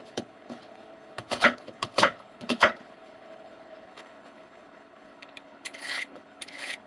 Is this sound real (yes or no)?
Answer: no